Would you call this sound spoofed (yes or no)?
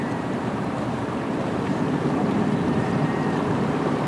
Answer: yes